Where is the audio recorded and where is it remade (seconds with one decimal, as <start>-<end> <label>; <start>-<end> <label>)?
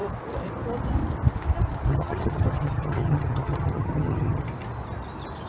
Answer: 0.0-1.9 recorded; 1.9-4.4 remade; 4.4-5.5 recorded